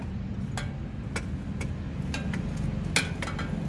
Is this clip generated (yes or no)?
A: no